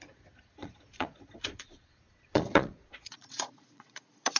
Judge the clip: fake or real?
fake